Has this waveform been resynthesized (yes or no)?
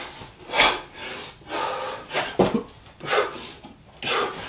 no